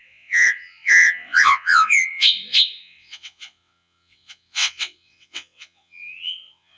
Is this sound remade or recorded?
remade